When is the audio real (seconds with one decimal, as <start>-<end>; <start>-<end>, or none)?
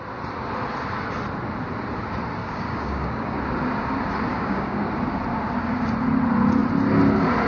0.0-2.4; 3.4-4.3; 4.9-7.5